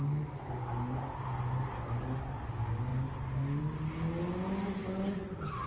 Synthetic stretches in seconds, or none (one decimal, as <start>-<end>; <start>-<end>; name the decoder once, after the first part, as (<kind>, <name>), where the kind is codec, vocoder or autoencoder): 4.8-5.7 (vocoder, BigVGAN v2)